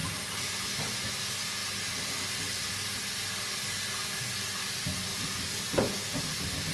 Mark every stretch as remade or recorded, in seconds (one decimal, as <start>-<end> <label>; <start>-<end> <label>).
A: 0.0-1.1 remade; 1.1-6.7 recorded